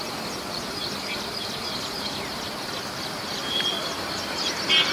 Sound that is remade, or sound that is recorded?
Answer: recorded